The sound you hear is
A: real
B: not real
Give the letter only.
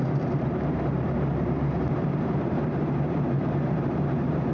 B